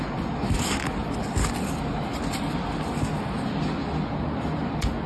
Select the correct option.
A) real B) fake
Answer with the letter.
A